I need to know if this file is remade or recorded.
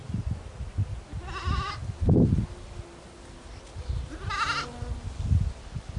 recorded